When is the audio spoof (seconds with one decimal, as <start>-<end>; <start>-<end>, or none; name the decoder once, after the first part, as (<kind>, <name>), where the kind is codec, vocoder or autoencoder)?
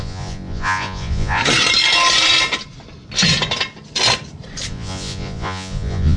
0.0-1.4 (vocoder, Vocos); 4.7-6.2